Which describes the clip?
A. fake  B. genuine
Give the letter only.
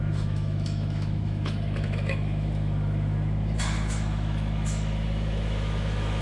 A